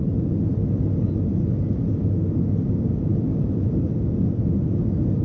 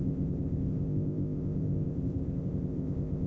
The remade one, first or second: second